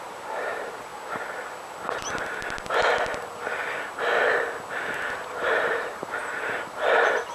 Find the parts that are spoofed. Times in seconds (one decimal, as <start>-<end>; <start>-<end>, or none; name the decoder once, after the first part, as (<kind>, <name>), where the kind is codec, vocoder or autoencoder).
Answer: 0.0-0.9 (vocoder, BigVGAN v2); 5.3-6.2; 6.7-7.3